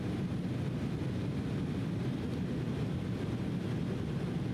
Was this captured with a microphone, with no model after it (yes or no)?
yes